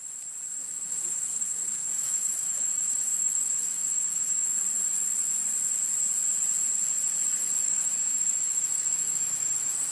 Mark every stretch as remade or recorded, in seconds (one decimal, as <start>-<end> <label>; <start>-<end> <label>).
0.0-0.6 recorded; 0.6-4.6 remade; 4.6-7.6 recorded; 7.6-9.9 remade